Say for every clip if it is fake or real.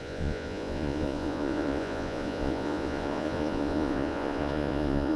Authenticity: fake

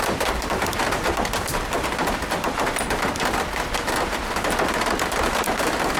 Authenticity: real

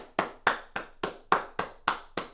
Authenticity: real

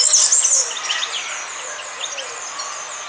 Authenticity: real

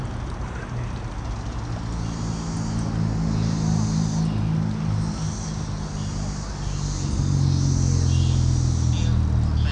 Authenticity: real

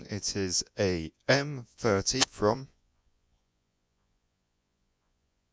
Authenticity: fake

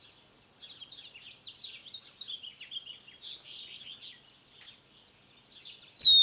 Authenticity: real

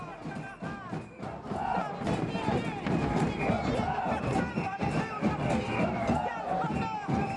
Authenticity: real